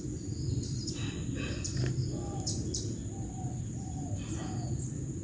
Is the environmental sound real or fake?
fake